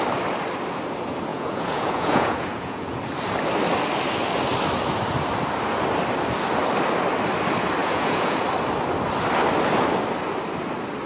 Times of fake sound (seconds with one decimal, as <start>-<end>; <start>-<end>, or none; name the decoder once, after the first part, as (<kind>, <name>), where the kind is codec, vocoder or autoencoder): 1.3-3.0 (vocoder, Vocos); 7.8-8.4